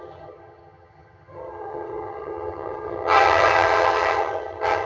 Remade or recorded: remade